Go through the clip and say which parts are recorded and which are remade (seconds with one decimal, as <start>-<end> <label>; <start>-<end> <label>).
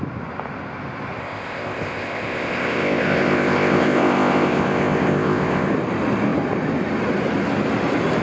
0.0-1.2 recorded; 1.2-5.7 remade; 5.7-8.2 recorded